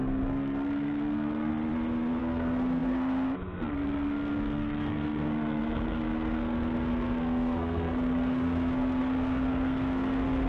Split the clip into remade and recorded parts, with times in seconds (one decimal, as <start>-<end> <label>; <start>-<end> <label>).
0.0-1.5 remade; 1.5-2.2 recorded; 2.2-10.5 remade

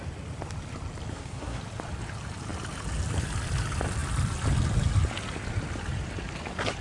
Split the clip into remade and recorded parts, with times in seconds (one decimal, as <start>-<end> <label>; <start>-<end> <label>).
0.0-1.1 recorded; 1.1-1.6 remade; 1.6-6.8 recorded

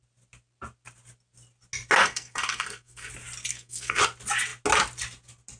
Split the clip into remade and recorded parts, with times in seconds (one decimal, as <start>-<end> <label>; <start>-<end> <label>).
0.0-2.0 recorded; 2.0-3.1 remade; 3.1-3.5 recorded; 3.5-4.0 remade; 4.0-5.6 recorded

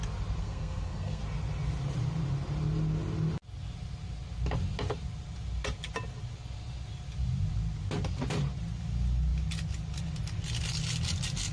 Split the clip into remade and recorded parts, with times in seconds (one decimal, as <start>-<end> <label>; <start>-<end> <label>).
0.0-0.4 recorded; 0.4-1.2 remade; 1.2-11.5 recorded

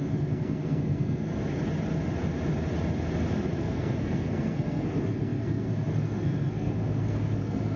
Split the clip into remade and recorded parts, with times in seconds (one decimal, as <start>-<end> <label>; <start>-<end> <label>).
0.0-1.3 remade; 1.3-3.6 recorded; 3.6-7.8 remade